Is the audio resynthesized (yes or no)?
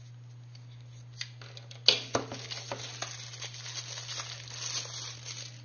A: no